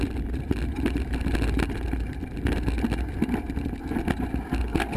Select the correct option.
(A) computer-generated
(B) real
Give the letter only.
B